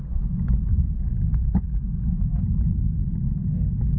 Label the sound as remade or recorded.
recorded